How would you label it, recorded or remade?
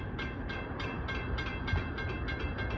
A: recorded